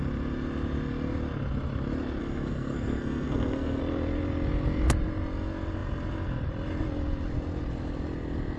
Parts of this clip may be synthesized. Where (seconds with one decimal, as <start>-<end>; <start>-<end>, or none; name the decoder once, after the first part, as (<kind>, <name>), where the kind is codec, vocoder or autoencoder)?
2.2-3.8 (codec, SNAC)